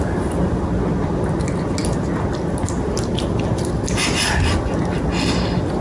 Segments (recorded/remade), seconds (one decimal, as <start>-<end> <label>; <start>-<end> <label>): 0.0-5.8 recorded